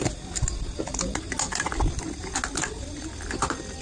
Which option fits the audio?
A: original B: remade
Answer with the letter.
A